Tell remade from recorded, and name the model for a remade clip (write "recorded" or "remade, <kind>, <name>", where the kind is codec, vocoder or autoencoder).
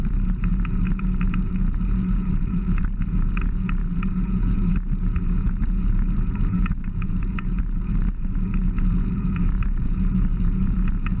remade, vocoder, Vocos